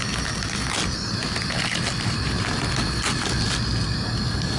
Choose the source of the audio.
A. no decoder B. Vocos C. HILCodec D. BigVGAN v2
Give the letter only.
A